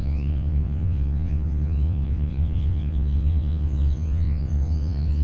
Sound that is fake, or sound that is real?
fake